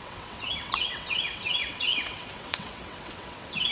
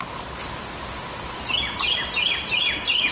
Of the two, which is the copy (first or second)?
first